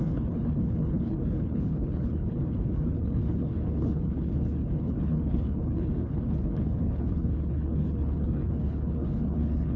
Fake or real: fake